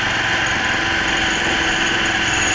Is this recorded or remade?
recorded